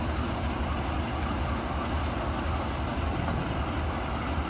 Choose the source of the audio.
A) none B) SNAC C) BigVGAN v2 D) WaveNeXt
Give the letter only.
A